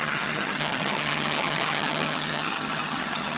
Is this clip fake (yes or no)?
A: yes